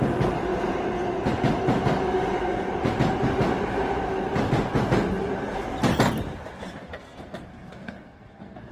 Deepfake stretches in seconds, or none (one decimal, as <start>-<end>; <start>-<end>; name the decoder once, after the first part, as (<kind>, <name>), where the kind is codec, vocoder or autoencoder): 6.8-8.7 (codec, SNAC)